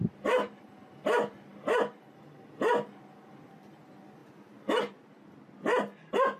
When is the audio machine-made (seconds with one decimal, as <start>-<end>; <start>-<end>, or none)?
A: none